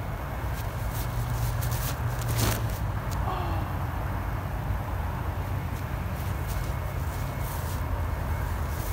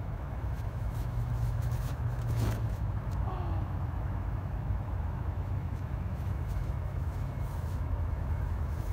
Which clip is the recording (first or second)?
first